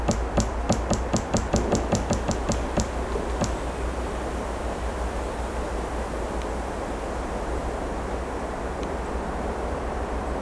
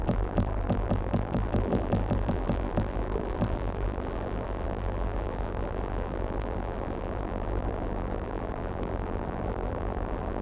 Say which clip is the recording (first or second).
first